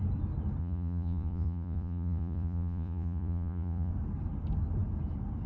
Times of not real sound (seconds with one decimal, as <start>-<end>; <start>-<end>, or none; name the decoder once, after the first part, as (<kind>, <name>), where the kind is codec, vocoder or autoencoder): 0.6-3.9 (vocoder, Vocos)